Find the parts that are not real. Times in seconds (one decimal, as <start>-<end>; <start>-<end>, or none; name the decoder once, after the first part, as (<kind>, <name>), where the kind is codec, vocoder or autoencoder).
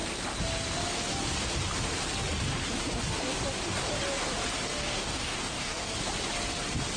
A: 4.7-5.9 (codec, DAC)